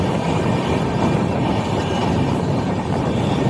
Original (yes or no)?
yes